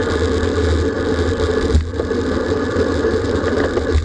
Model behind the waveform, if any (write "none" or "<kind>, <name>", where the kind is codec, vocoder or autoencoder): none